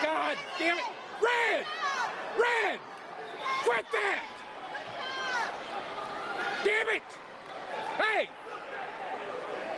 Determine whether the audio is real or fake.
fake